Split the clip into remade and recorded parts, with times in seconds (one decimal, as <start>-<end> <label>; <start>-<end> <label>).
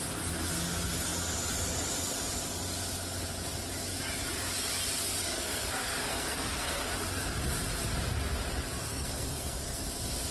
0.0-5.2 recorded; 5.2-6.9 remade; 6.9-8.8 recorded; 8.8-9.8 remade; 9.8-10.3 recorded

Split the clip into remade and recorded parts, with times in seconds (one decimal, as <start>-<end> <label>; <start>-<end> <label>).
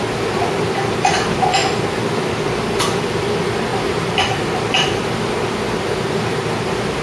0.0-7.0 recorded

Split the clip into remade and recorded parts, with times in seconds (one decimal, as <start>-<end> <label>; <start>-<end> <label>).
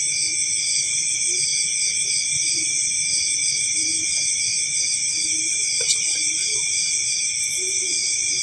0.0-8.4 recorded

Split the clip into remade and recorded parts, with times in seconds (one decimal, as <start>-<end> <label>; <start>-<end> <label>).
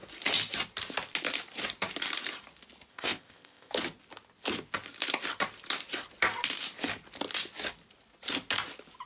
0.0-2.9 recorded; 2.9-3.7 remade; 3.7-9.1 recorded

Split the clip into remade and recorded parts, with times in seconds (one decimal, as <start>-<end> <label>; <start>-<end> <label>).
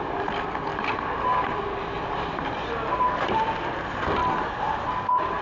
0.0-5.4 recorded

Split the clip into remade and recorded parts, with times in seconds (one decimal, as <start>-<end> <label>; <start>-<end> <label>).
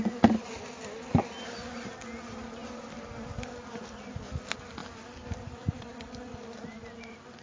0.0-7.4 recorded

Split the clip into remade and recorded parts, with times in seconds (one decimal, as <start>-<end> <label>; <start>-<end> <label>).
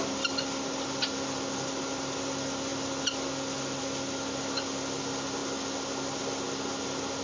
0.0-7.2 recorded